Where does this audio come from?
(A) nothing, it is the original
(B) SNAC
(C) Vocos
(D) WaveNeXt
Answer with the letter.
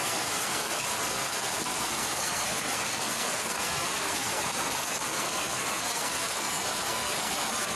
B